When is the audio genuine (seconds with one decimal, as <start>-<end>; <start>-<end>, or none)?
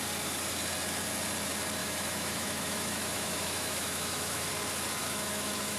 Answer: 0.0-1.8; 4.5-5.0